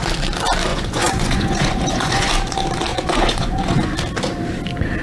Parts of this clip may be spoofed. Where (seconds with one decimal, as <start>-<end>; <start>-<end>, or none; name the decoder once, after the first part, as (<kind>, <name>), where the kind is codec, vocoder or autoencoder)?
0.7-2.3 (vocoder, Vocos); 2.9-3.9